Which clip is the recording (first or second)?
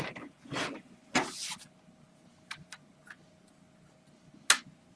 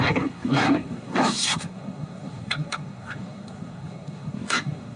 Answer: first